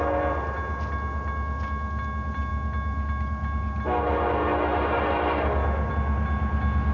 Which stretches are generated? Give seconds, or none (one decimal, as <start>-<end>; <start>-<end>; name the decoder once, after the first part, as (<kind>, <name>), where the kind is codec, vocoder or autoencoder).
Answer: none